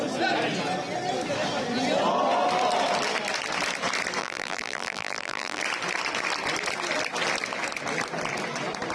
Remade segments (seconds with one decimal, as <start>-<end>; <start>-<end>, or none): 4.2-5.6